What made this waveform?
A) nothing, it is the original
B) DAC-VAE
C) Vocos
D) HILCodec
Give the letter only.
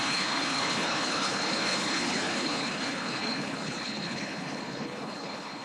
D